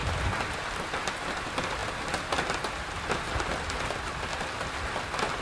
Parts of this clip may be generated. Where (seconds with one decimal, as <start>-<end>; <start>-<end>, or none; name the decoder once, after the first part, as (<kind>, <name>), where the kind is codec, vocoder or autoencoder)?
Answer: none